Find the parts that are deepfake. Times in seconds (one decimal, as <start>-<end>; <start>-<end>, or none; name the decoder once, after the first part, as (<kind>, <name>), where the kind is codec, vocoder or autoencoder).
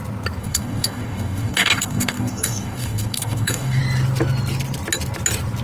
0.4-3.8 (codec, DAC)